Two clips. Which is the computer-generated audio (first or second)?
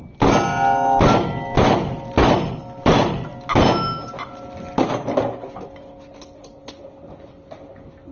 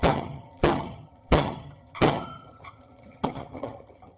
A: second